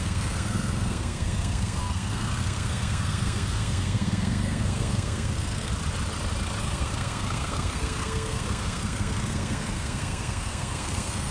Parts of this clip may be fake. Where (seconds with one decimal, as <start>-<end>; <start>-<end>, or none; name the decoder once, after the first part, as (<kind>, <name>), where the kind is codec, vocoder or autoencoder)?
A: 0.0-5.7 (codec, SNAC); 6.6-11.3